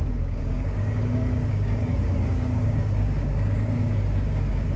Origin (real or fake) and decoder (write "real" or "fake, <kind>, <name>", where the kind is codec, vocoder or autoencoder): fake, codec, DAC